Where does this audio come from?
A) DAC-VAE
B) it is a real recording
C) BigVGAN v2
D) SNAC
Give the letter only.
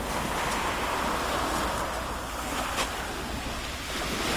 B